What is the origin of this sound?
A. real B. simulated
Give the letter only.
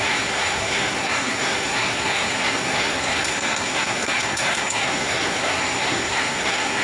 B